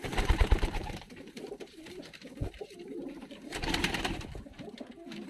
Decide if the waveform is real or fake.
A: fake